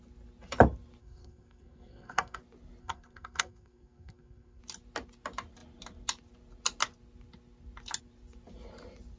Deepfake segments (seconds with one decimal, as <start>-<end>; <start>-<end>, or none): 1.0-2.4; 2.8-4.6